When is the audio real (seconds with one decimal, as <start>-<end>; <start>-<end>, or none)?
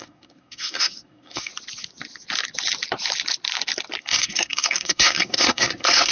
1.5-4.0